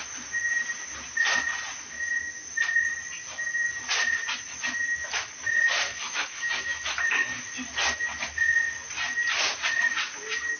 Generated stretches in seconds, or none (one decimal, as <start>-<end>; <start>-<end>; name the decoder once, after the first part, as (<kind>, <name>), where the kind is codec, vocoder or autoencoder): 5.9-7.5 (autoencoder, DAC-VAE)